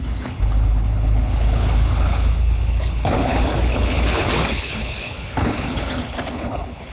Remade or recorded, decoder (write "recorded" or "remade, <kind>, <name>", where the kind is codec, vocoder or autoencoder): remade, codec, HILCodec